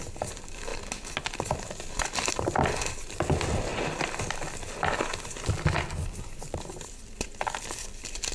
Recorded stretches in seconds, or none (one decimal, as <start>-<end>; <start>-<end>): 0.0-8.3